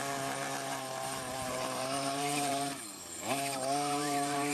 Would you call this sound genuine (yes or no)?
no